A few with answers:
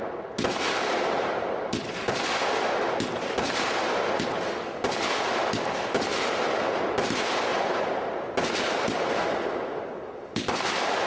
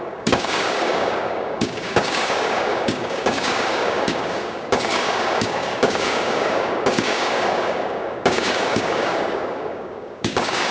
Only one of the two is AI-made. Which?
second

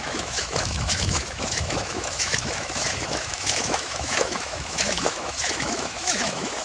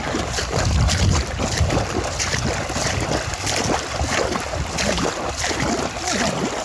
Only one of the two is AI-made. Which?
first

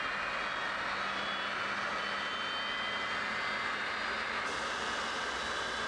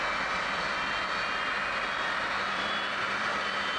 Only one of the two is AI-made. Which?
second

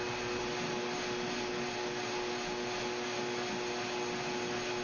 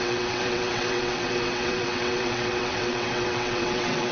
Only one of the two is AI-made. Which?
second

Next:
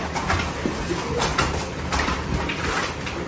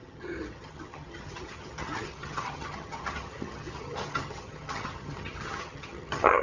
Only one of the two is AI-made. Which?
second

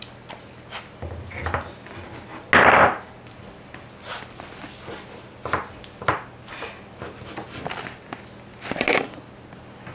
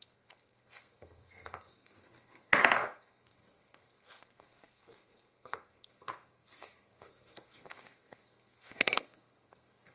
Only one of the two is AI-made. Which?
second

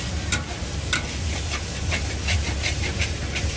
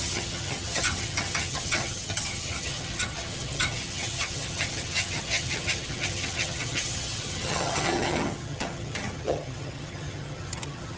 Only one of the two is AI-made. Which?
second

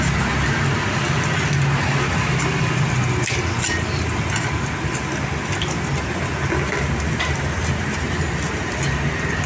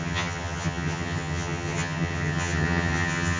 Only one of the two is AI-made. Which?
second